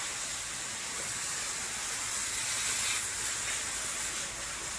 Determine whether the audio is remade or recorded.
recorded